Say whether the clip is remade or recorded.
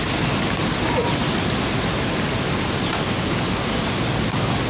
recorded